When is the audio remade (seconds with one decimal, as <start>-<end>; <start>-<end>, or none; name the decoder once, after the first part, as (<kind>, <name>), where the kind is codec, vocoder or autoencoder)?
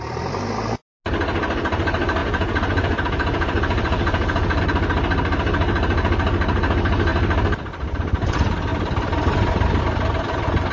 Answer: 2.2-4.6 (vocoder, Vocos)